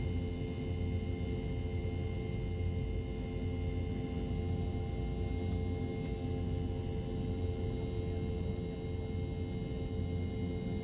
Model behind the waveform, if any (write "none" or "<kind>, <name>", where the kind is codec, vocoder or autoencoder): none